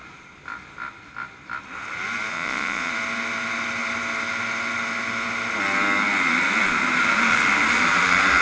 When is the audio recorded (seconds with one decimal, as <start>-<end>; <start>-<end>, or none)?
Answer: 0.0-2.3; 2.9-8.4